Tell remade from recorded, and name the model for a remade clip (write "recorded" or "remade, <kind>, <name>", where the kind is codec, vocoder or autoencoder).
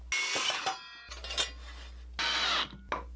recorded